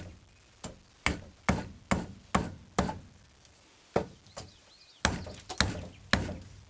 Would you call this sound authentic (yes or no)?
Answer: yes